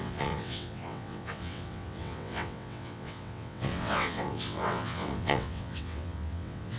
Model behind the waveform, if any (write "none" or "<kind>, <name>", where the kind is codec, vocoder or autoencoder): vocoder, WaveNeXt